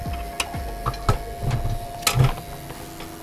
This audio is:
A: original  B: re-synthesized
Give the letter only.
A